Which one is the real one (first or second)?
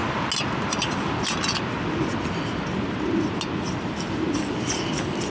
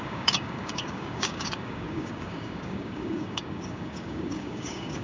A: first